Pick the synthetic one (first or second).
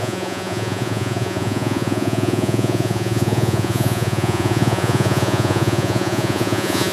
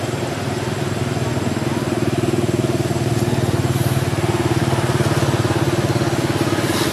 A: first